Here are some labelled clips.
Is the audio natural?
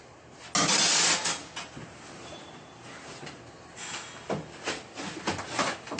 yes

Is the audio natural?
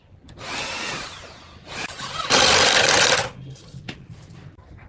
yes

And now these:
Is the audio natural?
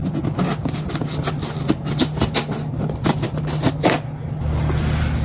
yes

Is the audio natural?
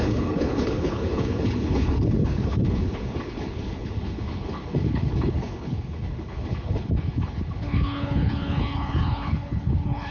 no